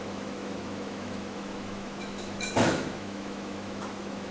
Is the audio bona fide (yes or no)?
no